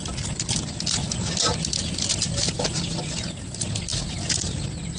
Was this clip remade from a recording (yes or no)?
no